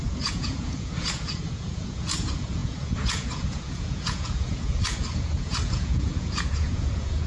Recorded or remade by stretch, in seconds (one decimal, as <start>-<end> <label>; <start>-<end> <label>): 0.0-7.3 remade